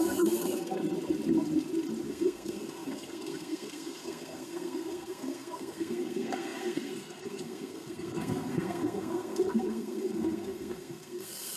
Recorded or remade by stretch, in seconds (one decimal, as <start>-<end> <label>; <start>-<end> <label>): 0.0-0.8 remade; 0.8-2.1 recorded; 2.1-11.6 remade